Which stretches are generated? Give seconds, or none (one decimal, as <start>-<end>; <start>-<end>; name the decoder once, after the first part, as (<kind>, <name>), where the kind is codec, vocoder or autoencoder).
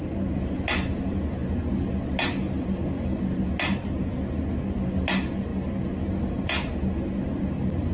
none